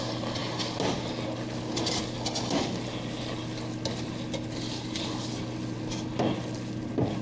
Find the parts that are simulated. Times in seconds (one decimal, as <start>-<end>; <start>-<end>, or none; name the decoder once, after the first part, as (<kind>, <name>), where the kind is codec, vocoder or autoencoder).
none